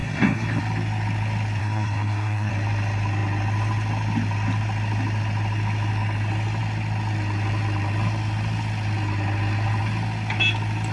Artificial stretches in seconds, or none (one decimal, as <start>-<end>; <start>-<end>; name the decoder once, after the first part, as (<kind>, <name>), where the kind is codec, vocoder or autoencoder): 0.0-0.6 (codec, SNAC); 1.6-2.5